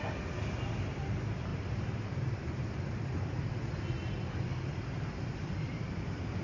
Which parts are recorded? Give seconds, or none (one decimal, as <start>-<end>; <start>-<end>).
0.0-1.5; 3.4-6.4